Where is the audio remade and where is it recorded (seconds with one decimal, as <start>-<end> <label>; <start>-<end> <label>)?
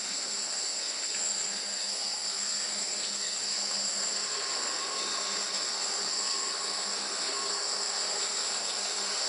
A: 0.0-9.3 remade